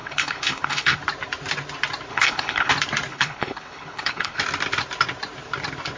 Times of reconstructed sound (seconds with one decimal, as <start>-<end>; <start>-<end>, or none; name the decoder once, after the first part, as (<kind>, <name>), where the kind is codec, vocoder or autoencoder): 0.0-1.0 (codec, HILCodec); 2.1-2.7; 3.1-4.4

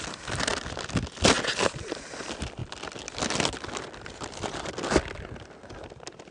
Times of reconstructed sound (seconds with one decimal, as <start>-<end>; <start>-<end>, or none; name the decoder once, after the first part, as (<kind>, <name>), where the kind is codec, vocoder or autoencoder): none